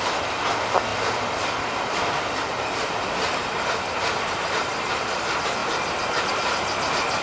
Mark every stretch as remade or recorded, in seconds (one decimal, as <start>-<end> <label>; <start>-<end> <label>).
0.0-0.9 recorded; 0.9-4.9 remade; 4.9-7.2 recorded